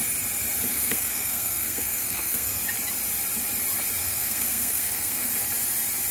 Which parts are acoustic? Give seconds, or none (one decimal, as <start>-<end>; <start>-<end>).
0.0-0.7; 2.6-4.0; 5.3-6.1